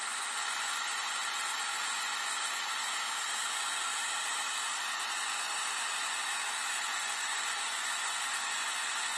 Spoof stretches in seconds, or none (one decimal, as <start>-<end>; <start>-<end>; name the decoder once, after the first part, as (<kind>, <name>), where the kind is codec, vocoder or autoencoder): 0.0-2.8 (vocoder, Vocos); 3.5-3.9; 4.9-9.2